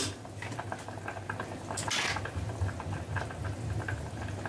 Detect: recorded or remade recorded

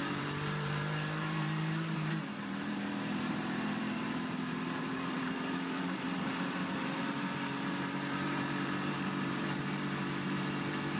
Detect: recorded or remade remade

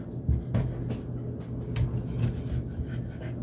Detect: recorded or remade recorded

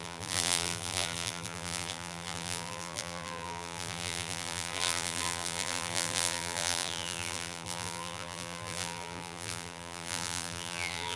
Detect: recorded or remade remade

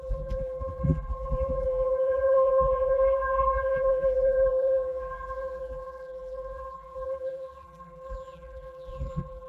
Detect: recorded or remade remade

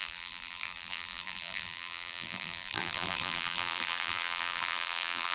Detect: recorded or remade remade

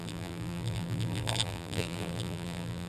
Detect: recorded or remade remade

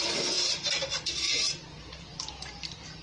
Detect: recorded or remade remade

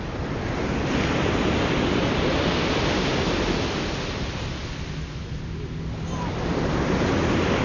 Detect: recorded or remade recorded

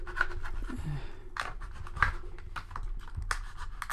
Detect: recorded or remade recorded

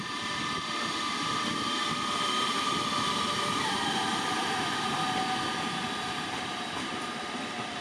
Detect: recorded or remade remade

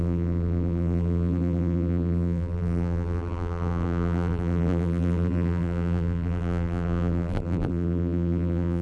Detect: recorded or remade remade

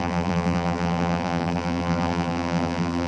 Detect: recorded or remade remade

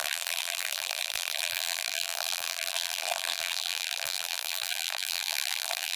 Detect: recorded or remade remade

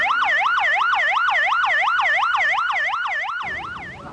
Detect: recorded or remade recorded